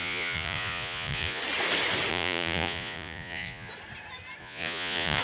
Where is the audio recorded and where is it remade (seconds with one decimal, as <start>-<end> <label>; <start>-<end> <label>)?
0.0-1.4 remade; 1.4-2.1 recorded; 2.1-3.7 remade; 3.7-4.4 recorded; 4.4-5.2 remade